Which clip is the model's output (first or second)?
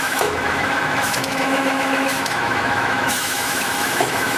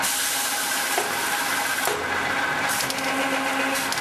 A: first